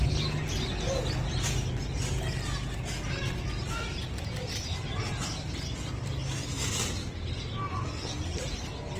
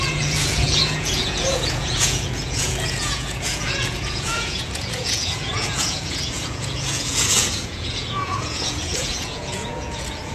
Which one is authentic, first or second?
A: first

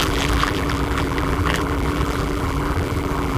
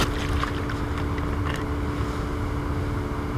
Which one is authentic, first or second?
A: second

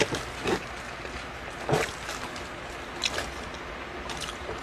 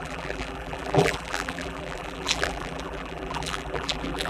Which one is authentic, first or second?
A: first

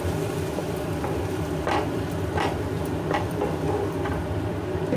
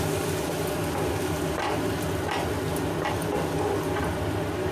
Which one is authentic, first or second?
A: second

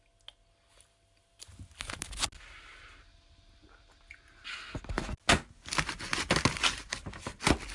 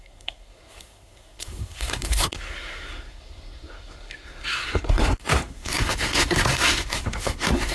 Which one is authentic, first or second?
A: first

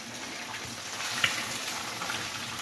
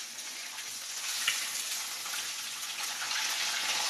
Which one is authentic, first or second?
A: first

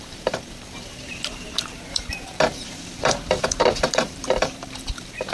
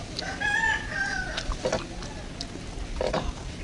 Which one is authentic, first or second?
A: second